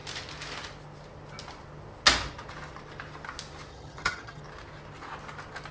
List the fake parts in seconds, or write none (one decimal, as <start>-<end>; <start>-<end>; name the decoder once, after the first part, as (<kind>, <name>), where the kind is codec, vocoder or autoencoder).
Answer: 3.7-4.4 (vocoder, HiFi-GAN)